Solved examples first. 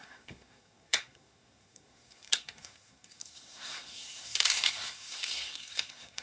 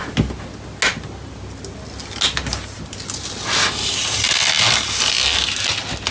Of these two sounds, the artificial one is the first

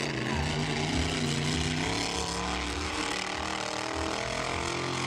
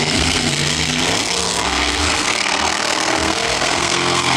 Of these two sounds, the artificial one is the second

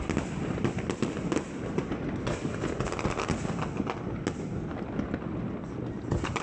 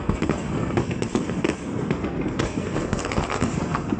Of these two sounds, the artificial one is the second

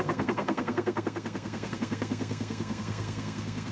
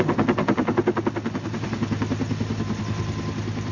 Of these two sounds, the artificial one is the first